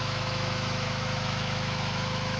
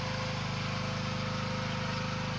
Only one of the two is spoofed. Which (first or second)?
first